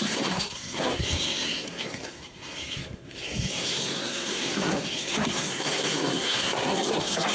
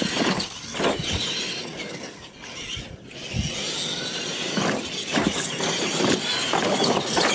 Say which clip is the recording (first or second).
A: second